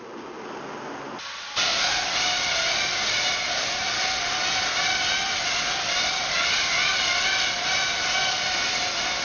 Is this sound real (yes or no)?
yes